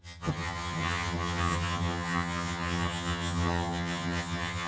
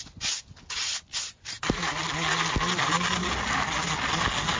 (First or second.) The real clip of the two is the second